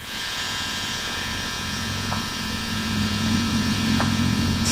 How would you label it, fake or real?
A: fake